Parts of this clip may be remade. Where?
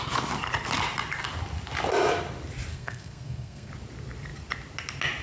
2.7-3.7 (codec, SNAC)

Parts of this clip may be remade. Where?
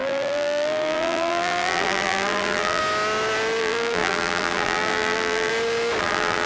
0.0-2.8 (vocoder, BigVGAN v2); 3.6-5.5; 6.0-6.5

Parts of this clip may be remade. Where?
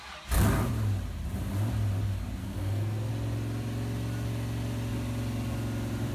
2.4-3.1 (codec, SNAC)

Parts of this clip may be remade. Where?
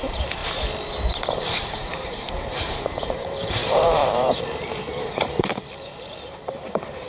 0.0-0.4 (vocoder, BigVGAN v2); 1.3-7.1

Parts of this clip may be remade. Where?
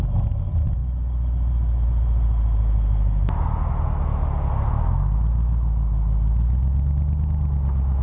none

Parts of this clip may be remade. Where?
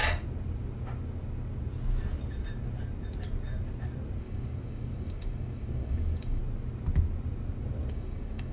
4.2-6.4 (codec, DAC); 7.9-8.5